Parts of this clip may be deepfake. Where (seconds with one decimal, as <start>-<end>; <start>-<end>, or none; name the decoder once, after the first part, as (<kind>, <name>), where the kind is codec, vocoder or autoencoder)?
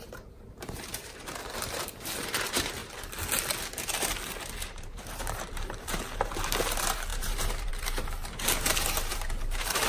0.0-2.8 (vocoder, BigVGAN v2); 4.7-8.2; 9.1-9.9